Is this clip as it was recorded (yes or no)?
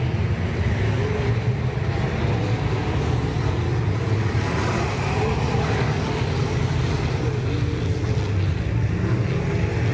yes